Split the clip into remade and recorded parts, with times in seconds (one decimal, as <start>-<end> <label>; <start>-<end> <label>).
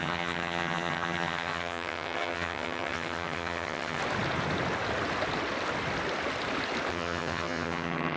0.0-4.0 remade; 4.0-6.9 recorded; 6.9-8.2 remade